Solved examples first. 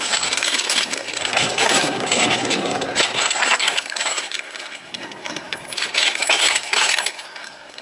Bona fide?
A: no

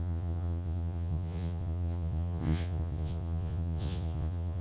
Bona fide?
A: no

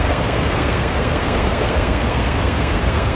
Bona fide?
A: no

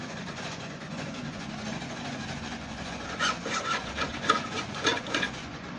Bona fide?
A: no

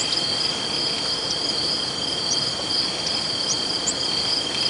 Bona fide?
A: yes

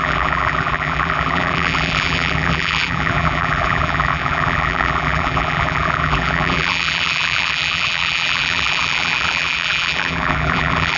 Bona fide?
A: no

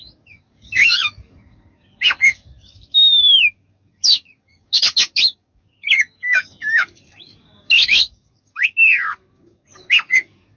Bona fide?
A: no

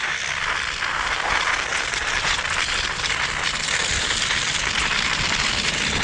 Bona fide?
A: no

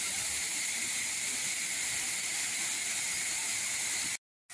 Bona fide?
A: yes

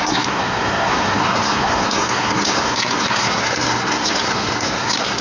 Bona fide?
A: no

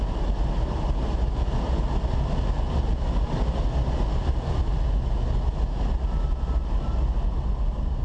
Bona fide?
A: yes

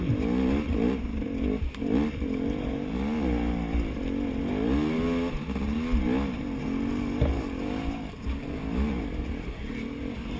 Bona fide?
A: yes